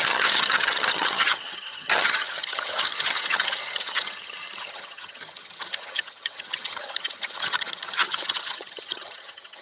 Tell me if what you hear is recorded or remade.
remade